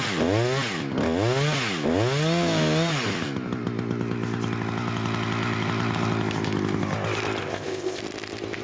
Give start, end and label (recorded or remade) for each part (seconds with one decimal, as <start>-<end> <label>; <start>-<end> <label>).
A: 0.0-7.4 recorded; 7.4-8.0 remade; 8.0-8.6 recorded